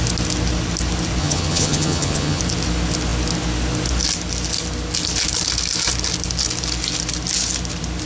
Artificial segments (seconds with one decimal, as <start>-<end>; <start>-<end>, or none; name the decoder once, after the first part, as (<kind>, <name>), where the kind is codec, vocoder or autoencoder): 1.2-2.4 (vocoder, HiFi-GAN)